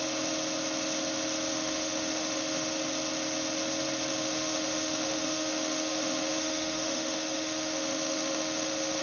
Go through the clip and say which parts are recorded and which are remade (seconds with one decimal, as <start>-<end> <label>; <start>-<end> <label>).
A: 0.0-1.5 recorded; 1.5-2.8 remade; 2.8-4.1 recorded; 4.1-9.0 remade